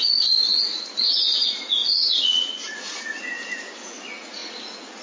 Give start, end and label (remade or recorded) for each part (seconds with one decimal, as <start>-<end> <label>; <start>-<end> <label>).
0.0-5.0 remade